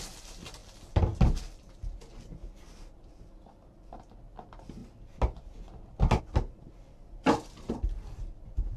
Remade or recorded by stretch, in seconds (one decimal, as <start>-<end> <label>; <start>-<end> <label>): 0.0-8.8 recorded